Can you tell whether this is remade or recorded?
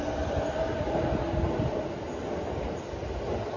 recorded